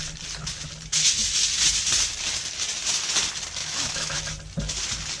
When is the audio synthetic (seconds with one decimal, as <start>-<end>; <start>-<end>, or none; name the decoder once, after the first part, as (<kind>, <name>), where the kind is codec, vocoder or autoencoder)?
3.6-4.2 (autoencoder, DAC-VAE)

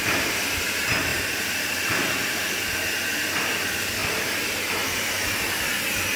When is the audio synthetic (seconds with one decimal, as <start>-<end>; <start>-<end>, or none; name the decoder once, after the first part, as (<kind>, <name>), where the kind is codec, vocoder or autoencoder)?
1.1-1.7 (vocoder, BigVGAN v2); 4.0-5.6

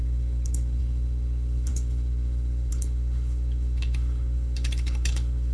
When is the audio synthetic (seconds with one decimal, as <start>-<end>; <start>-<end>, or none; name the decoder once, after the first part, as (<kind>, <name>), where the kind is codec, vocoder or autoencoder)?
0.0-5.5 (codec, HILCodec)

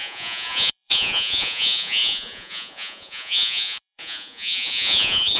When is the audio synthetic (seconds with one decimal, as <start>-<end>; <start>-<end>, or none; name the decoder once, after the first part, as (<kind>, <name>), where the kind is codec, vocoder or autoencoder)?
0.0-5.4 (vocoder, Vocos)

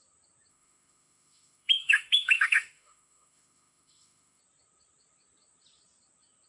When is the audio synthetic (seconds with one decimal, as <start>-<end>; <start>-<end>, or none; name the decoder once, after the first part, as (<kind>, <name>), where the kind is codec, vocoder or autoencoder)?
0.5-4.4 (autoencoder, DAC-VAE)

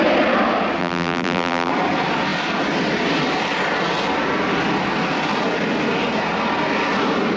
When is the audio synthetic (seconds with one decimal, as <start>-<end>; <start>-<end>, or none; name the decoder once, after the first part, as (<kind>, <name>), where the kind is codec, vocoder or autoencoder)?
0.8-1.7 (vocoder, BigVGAN v2)

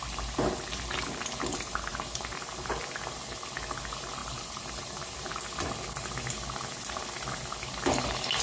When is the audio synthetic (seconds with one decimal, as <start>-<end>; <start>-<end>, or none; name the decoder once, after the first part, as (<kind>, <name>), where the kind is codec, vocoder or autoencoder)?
1.9-3.2 (vocoder, BigVGAN v2); 4.2-5.3